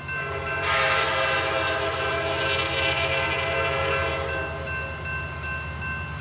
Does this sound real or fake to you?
real